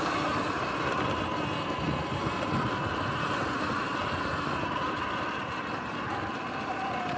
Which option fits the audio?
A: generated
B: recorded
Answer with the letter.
B